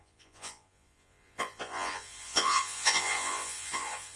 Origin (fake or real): fake